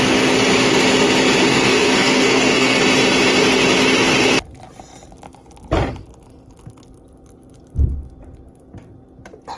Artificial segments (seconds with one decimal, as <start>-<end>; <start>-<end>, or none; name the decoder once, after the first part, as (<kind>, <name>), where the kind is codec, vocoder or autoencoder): 1.5-2.8 (codec, SNAC)